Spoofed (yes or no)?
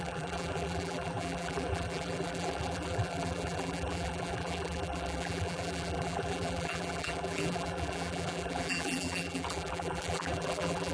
yes